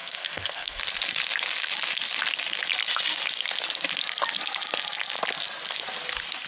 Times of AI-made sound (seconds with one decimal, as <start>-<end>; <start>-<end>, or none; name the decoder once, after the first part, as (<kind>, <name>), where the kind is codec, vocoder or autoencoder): 0.0-0.8 (codec, SNAC)